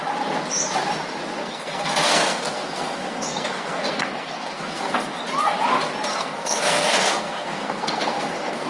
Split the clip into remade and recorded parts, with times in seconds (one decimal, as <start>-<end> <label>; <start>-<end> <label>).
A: 0.0-1.4 recorded; 1.4-5.2 remade; 5.2-6.1 recorded; 6.1-8.7 remade